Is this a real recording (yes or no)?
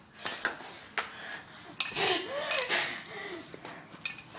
yes